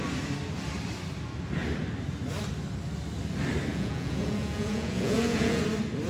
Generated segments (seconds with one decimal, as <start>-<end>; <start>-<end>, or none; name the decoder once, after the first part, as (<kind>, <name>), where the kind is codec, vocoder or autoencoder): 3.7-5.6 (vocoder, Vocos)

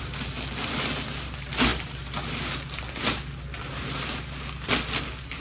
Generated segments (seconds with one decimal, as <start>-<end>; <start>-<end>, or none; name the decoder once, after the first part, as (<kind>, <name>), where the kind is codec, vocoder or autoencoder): none

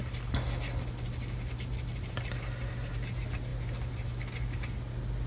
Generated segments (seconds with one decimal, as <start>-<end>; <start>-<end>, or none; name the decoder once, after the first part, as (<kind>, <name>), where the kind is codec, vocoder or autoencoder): none

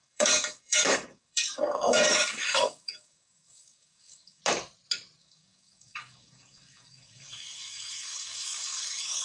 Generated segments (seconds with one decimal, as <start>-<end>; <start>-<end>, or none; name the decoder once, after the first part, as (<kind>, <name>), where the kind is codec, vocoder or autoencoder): 0.0-4.4 (codec, DAC); 5.2-9.2

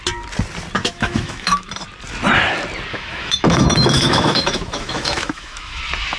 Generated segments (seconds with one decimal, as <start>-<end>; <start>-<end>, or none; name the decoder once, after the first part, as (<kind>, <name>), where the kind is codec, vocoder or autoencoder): 0.8-1.7 (autoencoder, DAC-VAE); 2.9-5.8